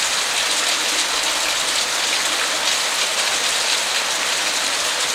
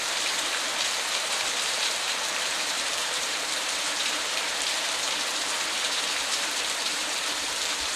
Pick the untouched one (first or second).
first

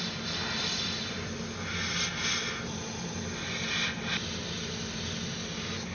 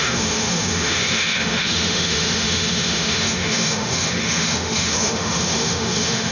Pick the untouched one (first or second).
first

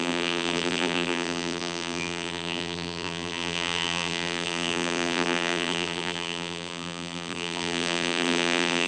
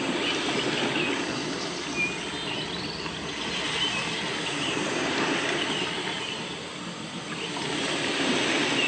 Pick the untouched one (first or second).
second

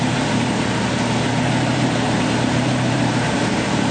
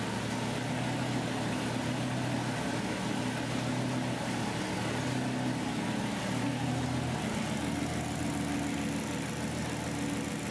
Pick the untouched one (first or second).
second